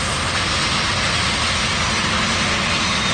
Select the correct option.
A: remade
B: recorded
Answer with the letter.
B